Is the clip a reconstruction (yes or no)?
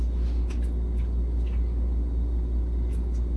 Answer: no